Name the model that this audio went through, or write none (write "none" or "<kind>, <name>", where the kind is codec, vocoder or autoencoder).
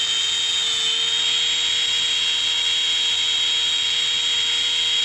none